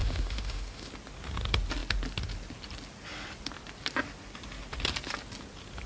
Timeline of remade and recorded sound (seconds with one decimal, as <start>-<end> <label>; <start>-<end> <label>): 0.0-0.9 remade; 0.9-5.9 recorded